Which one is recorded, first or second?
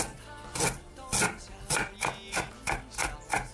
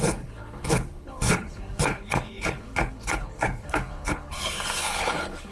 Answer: first